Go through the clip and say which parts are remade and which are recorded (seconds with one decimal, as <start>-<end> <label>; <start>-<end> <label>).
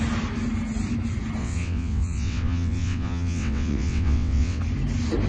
0.0-1.4 recorded; 1.4-4.6 remade; 4.6-5.3 recorded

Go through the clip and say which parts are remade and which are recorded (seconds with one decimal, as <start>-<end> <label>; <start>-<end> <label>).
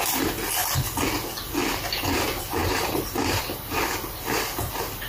0.0-0.6 remade; 0.6-2.0 recorded; 2.0-5.1 remade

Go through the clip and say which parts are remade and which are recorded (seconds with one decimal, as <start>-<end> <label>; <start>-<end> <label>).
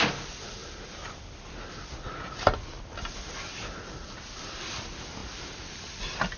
0.0-0.6 remade; 0.6-4.4 recorded; 4.4-6.4 remade